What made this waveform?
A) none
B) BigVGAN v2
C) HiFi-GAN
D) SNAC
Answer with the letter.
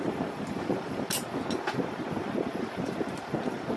A